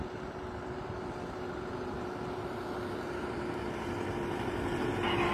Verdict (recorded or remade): recorded